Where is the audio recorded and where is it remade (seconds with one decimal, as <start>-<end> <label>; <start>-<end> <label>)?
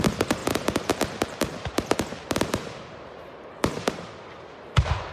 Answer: 0.0-5.1 recorded